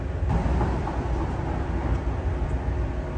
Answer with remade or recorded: recorded